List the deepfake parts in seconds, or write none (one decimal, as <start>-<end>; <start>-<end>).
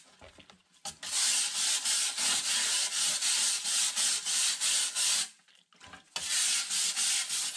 none